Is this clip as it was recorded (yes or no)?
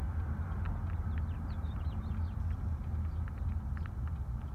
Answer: yes